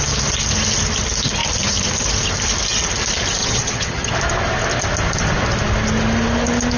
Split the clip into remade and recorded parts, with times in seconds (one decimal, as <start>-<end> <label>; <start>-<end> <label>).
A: 0.0-3.4 recorded; 3.4-4.1 remade; 4.1-6.8 recorded

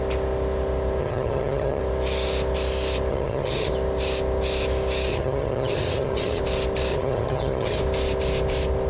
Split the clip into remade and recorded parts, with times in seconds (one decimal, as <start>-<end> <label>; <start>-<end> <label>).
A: 0.0-1.0 recorded; 1.0-1.8 remade; 1.8-3.1 recorded; 3.1-3.7 remade; 3.7-5.1 recorded; 5.1-6.4 remade; 6.4-6.9 recorded; 6.9-7.8 remade; 7.8-8.9 recorded

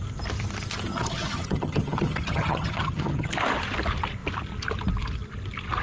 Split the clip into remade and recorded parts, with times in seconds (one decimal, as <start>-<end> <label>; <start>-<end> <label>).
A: 0.0-0.9 recorded; 0.9-3.3 remade; 3.3-5.8 recorded

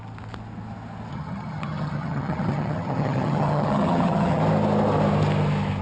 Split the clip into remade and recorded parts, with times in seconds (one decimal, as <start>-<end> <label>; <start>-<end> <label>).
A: 0.0-1.1 recorded; 1.1-4.4 remade; 4.4-5.8 recorded

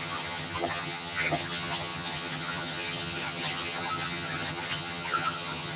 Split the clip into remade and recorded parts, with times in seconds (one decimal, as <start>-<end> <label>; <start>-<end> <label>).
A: 0.0-5.8 remade